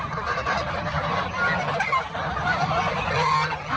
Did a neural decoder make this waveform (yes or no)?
no